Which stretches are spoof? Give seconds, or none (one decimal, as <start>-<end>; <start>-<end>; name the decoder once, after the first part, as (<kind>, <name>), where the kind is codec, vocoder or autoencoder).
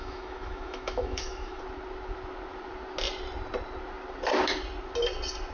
0.0-1.6 (autoencoder, DAC-VAE)